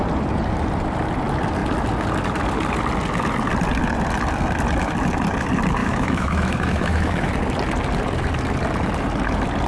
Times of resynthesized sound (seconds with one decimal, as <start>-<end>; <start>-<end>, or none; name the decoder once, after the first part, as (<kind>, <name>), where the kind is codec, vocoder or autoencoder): 5.8-7.3 (autoencoder, DAC-VAE)